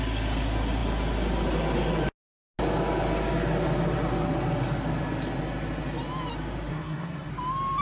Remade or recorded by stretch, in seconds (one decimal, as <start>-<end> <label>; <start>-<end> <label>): 0.0-6.7 recorded; 6.7-7.3 remade; 7.3-7.8 recorded